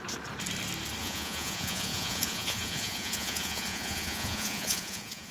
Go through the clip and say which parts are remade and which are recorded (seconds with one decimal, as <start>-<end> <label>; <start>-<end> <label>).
0.0-1.0 recorded; 1.0-5.3 remade